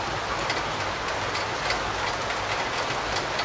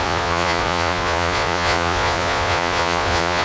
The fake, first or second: second